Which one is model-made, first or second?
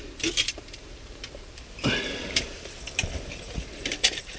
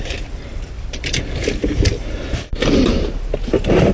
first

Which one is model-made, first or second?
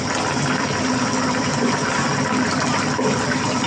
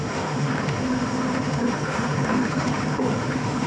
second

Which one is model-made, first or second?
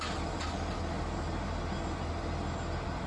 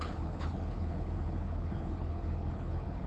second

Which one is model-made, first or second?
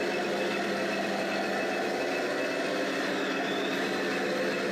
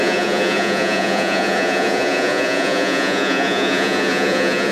second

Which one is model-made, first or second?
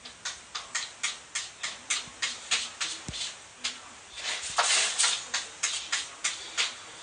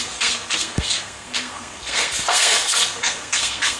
second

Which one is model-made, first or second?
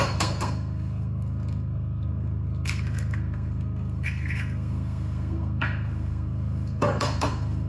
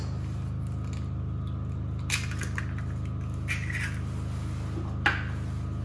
first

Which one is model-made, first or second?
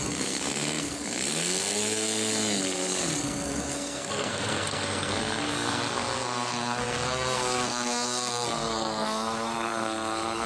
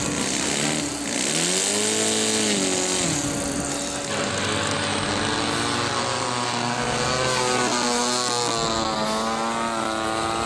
first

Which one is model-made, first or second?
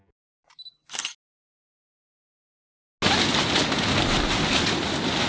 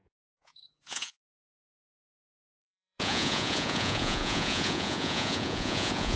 second